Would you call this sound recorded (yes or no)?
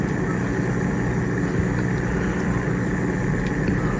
yes